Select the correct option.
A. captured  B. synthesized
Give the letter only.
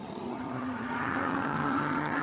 B